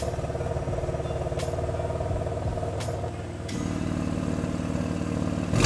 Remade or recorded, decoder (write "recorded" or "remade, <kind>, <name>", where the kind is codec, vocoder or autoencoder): recorded